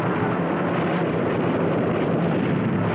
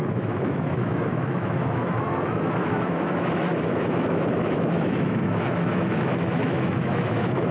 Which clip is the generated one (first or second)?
second